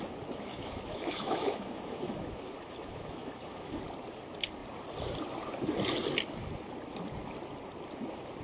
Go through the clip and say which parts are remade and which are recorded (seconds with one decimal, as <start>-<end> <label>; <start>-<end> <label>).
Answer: 0.0-0.5 recorded; 0.5-3.8 remade; 3.8-8.4 recorded